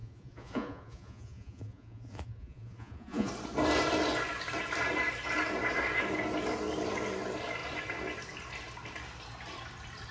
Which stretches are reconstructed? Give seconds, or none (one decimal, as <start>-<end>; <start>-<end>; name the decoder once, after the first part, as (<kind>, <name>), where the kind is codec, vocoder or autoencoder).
0.0-3.3 (vocoder, Vocos)